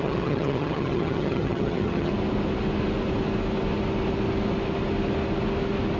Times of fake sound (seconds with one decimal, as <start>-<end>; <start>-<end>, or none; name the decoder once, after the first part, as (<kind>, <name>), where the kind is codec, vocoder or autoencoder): 0.0-2.1 (vocoder, HiFi-GAN)